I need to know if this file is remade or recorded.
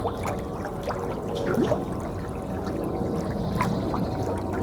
recorded